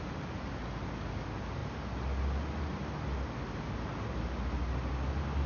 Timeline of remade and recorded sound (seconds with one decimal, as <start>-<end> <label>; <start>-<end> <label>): 0.0-5.5 recorded